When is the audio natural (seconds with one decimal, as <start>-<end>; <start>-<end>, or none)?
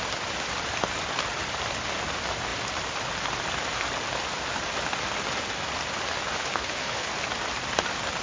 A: 0.0-6.5; 7.1-8.2